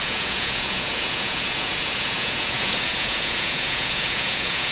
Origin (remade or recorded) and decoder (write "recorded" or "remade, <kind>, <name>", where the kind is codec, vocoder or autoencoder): remade, vocoder, Vocos